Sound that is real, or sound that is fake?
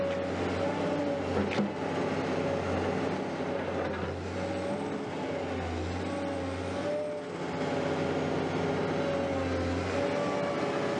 real